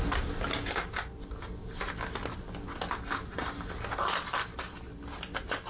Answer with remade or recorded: recorded